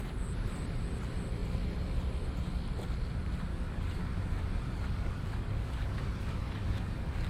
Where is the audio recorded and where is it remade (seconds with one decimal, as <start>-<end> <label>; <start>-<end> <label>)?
0.0-3.5 recorded; 3.5-7.3 remade